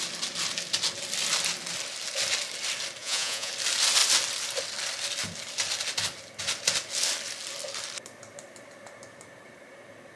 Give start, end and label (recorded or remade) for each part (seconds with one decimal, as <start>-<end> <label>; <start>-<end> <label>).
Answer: 0.0-3.0 recorded; 3.0-3.5 remade; 3.5-10.2 recorded